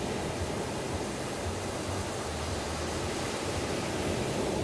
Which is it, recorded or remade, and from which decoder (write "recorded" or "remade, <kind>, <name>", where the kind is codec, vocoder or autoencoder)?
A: recorded